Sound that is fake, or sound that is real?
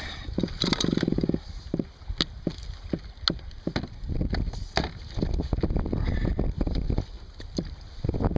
real